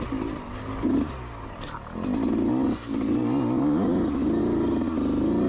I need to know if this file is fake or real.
real